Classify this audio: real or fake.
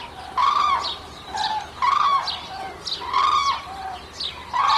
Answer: real